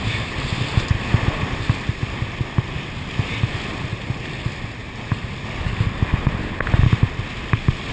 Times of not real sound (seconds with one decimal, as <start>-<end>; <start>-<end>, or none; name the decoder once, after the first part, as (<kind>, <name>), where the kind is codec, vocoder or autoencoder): none